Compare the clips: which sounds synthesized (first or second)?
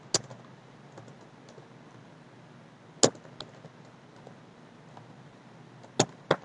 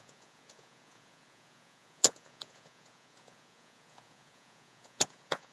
second